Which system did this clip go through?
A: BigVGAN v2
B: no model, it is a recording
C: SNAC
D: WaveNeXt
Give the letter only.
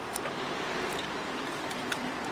A